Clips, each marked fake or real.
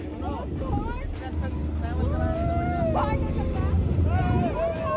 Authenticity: real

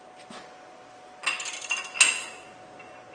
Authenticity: real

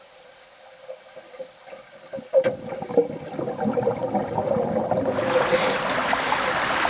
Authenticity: real